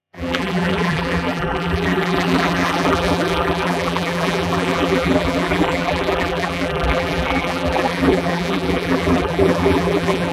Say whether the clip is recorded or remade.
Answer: remade